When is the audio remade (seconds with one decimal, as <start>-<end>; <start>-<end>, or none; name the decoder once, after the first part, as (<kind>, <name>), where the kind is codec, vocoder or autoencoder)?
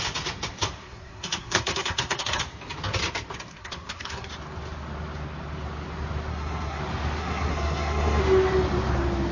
0.8-2.4 (codec, SNAC); 3.5-4.3; 6.3-6.8; 7.2-8.2